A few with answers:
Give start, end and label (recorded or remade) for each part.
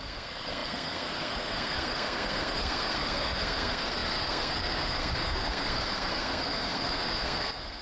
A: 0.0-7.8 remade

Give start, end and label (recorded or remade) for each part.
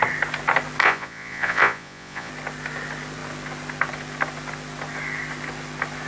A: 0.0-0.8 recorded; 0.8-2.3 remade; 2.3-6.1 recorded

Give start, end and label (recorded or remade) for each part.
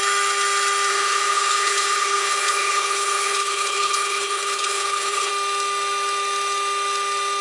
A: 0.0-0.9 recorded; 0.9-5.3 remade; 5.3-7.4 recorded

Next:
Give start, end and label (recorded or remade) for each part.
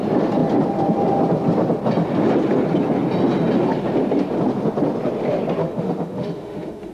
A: 0.0-5.6 recorded; 5.6-6.9 remade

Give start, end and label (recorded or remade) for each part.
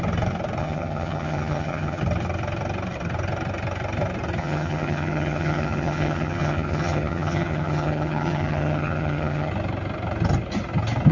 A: 0.0-0.6 recorded; 0.6-2.0 remade; 2.0-4.4 recorded; 4.4-9.5 remade; 9.5-11.1 recorded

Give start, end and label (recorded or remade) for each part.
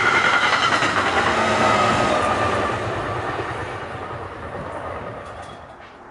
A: 0.0-0.9 recorded; 0.9-2.1 remade; 2.1-6.1 recorded